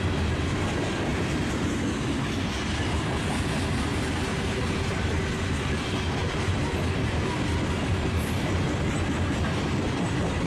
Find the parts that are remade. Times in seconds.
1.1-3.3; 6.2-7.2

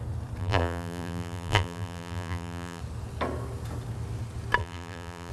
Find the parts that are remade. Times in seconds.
0.4-2.8; 4.6-5.3

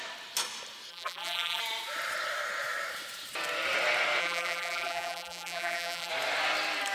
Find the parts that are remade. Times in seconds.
0.9-1.6; 4.2-6.1

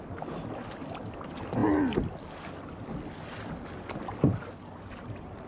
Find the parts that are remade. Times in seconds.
none

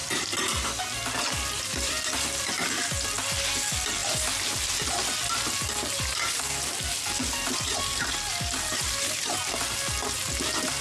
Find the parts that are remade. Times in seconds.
0.0-2.4

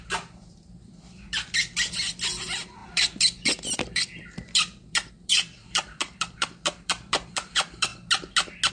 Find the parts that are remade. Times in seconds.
0.0-1.6; 2.3-7.9

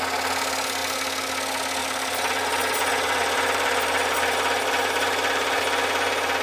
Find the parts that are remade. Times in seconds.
1.8-5.6

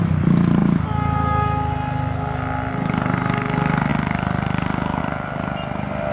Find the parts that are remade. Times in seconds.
none